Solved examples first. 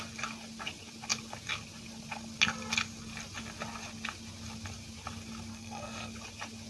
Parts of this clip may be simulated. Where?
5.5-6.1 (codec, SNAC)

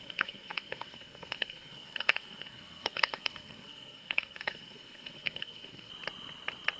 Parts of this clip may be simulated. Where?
0.0-5.9 (codec, SNAC)

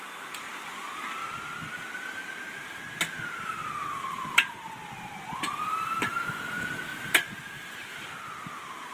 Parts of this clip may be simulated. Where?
6.9-8.3 (vocoder, BigVGAN v2)

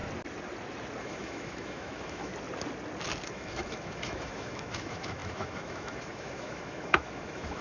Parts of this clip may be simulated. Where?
1.0-2.3 (autoencoder, DAC-VAE); 3.3-7.6

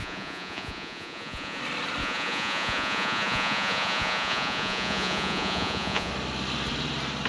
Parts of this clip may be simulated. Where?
0.0-1.6 (vocoder, Vocos); 2.0-6.1

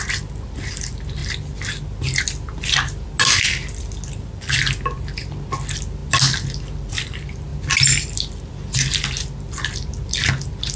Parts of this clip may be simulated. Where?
none